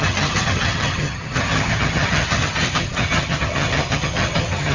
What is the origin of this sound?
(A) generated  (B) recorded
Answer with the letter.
A